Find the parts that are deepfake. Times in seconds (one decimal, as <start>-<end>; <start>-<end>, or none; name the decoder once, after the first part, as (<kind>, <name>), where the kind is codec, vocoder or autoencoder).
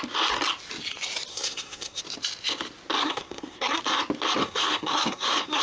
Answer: 1.3-2.0 (codec, SNAC); 3.0-3.8; 4.4-5.6